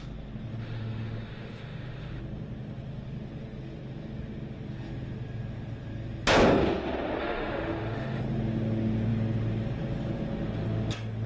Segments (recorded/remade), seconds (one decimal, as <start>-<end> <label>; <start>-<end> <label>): 0.0-0.6 recorded; 0.6-2.2 remade; 2.2-7.2 recorded; 7.2-8.2 remade; 8.2-11.3 recorded